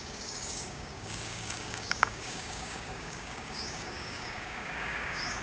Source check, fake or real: fake